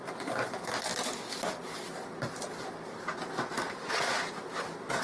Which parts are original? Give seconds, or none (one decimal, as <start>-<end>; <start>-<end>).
0.0-5.0